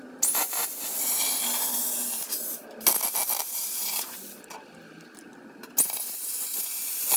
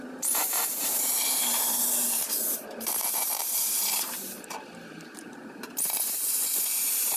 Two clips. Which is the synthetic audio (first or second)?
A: second